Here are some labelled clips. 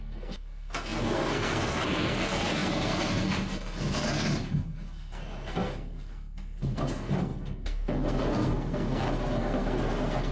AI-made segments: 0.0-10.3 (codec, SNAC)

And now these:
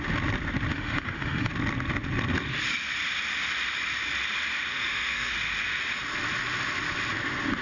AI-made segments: 0.7-1.5 (autoencoder, DAC-VAE); 4.7-5.3

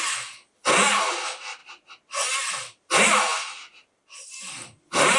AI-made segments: none